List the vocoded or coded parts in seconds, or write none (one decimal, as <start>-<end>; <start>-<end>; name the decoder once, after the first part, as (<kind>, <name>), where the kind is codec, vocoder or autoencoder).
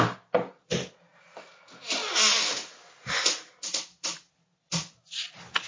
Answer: none